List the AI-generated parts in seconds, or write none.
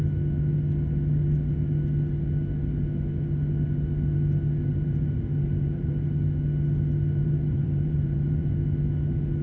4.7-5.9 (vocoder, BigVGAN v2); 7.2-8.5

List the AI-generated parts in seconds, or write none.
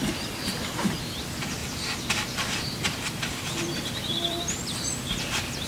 0.0-1.6 (vocoder, BigVGAN v2); 2.3-5.7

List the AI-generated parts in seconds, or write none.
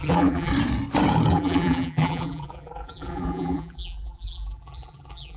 0.0-0.5 (vocoder, BigVGAN v2); 1.3-5.4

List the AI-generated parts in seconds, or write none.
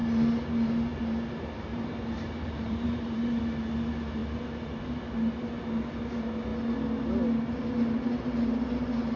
1.7-3.4 (vocoder, BigVGAN v2)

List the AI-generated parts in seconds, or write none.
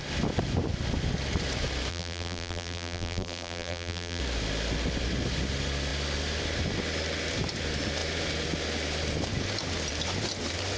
1.9-4.2 (vocoder, BigVGAN v2)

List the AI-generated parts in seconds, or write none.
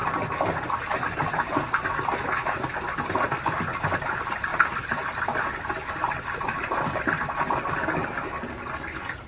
4.5-5.2 (vocoder, BigVGAN v2); 6.0-7.2